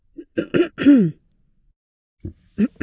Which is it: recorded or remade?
recorded